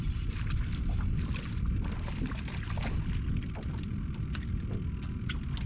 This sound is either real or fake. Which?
real